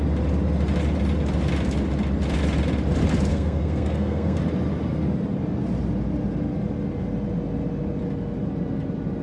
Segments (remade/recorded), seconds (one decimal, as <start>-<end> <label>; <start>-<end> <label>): 0.0-3.3 recorded; 3.3-4.4 remade; 4.4-9.2 recorded